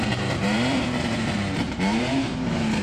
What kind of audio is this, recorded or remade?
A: remade